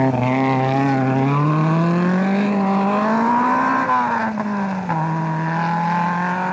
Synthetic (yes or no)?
no